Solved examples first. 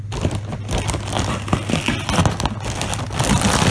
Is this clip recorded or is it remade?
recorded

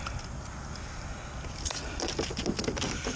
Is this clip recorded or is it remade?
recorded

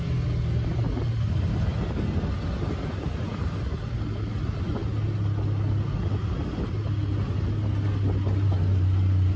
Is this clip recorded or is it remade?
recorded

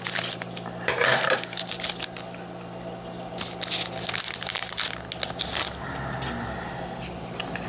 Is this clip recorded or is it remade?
recorded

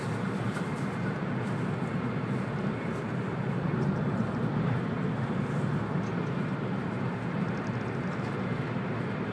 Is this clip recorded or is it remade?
recorded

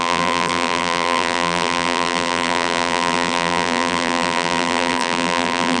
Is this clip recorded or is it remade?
remade